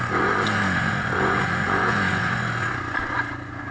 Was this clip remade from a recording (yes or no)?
yes